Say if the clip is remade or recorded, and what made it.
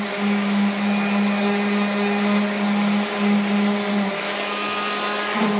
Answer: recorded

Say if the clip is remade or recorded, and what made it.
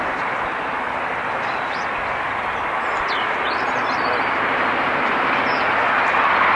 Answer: recorded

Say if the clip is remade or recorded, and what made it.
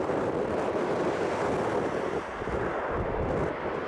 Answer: recorded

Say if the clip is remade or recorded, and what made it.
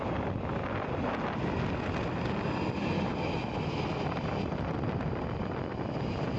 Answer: recorded